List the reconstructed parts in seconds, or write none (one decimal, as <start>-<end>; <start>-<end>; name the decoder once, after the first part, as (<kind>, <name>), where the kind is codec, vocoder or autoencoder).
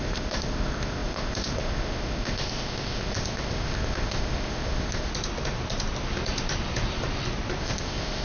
0.0-5.1 (codec, ZipCodec); 7.6-8.2